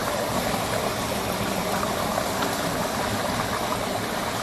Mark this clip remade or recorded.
recorded